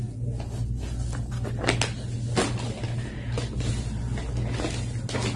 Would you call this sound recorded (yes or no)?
yes